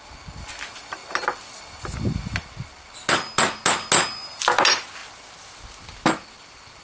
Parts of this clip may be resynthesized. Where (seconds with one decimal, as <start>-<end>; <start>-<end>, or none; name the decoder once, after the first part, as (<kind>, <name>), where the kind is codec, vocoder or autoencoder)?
none